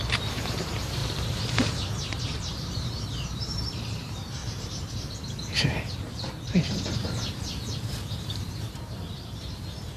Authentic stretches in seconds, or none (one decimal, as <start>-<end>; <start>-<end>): 4.4-4.9